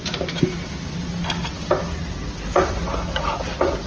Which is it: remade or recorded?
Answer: recorded